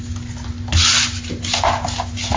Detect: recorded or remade recorded